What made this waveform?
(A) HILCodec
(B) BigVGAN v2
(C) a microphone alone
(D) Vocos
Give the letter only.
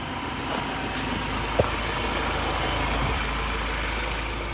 C